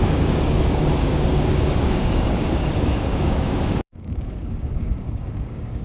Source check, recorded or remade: remade